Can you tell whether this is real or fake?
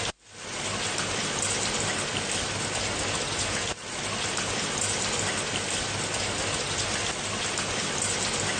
real